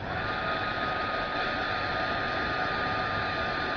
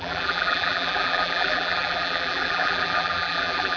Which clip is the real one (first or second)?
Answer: first